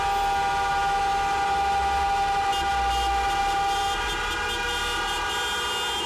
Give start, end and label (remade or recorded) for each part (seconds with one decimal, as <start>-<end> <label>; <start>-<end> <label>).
0.0-6.1 recorded